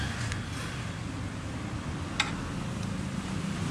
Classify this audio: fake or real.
real